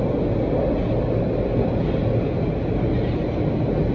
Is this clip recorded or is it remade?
recorded